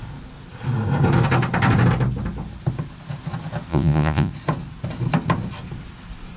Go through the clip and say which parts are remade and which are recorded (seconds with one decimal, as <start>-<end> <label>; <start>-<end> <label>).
0.0-3.7 recorded; 3.7-4.3 remade; 4.3-6.4 recorded